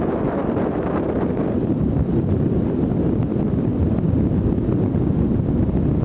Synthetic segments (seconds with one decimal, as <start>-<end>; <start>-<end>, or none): 0.0-3.7; 5.5-6.0